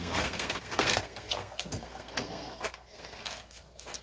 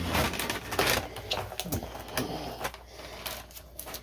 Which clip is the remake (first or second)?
first